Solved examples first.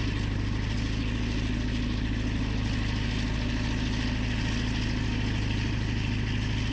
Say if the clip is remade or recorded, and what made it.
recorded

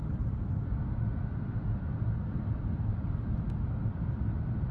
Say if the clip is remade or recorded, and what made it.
recorded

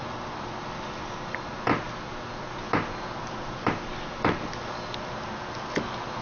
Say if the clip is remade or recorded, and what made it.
recorded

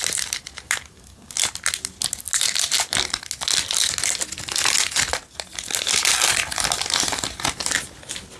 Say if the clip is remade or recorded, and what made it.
recorded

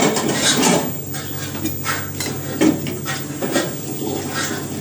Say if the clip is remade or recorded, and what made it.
recorded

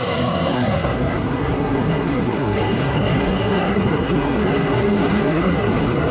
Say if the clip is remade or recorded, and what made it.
remade, codec, SNAC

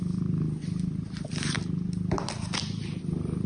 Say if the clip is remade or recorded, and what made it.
recorded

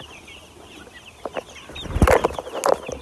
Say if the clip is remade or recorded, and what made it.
recorded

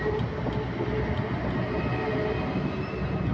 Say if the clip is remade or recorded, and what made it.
recorded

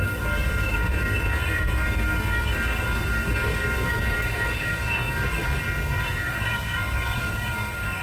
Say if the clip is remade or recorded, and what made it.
remade, codec, SNAC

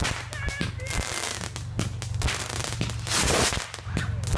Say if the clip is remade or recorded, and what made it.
recorded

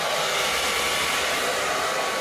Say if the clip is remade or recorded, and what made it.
recorded